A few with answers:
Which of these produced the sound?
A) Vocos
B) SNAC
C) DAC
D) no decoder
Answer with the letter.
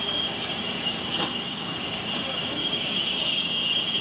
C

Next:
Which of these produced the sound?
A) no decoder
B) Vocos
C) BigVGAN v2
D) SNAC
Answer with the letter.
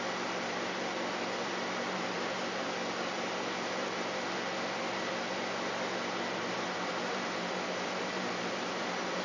C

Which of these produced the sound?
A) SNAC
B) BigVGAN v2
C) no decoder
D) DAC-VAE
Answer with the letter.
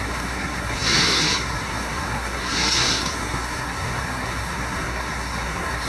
A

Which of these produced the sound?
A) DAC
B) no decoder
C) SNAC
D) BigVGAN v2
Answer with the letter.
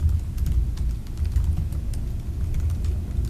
B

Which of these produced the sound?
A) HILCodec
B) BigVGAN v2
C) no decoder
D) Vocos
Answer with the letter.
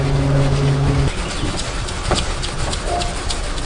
C